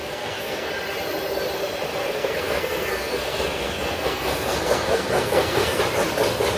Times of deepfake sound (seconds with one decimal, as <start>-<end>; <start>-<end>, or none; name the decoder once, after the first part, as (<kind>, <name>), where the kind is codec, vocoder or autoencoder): 0.0-0.7 (codec, SNAC); 2.0-5.8